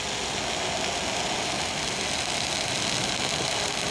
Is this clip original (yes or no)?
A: yes